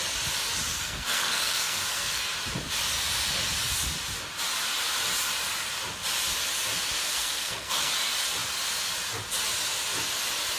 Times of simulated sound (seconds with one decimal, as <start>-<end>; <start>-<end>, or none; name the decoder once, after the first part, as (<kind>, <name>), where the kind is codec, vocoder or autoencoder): 0.7-2.2 (codec, SNAC); 7.1-7.9